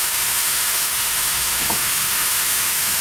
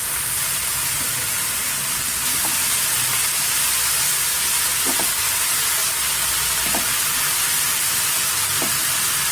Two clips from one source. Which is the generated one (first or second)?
first